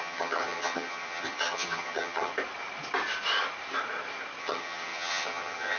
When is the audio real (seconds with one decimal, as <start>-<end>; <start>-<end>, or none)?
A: 2.3-4.4